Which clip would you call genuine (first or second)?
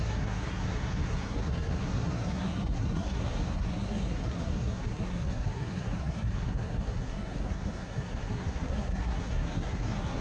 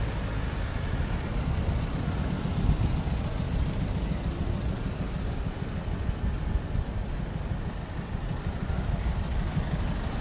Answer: second